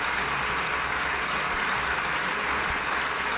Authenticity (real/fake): real